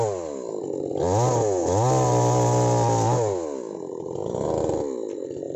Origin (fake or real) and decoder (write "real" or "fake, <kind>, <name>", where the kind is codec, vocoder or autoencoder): real